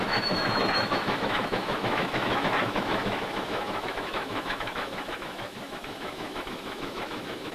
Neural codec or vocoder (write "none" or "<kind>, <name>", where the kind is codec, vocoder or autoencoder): autoencoder, DAC-VAE